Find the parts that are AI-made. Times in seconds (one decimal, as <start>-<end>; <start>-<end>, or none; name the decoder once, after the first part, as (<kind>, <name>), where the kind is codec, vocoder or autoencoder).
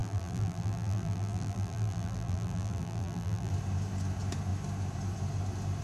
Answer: 0.0-3.5 (vocoder, BigVGAN v2)